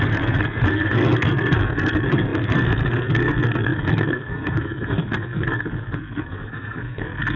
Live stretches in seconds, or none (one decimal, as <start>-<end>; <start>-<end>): none